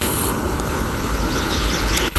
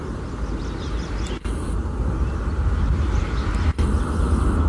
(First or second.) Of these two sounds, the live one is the second